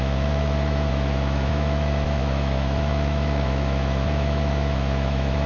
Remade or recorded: remade